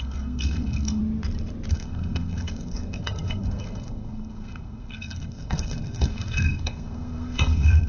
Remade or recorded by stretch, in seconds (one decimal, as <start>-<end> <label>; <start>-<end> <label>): 0.0-1.0 remade; 1.0-1.7 recorded; 1.7-7.9 remade